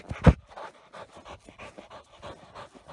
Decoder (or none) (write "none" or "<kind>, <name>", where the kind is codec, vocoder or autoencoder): none